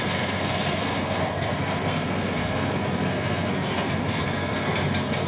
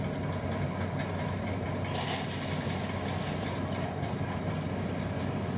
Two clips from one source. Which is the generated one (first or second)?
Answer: first